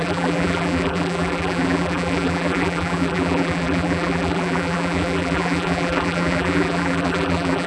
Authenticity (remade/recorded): remade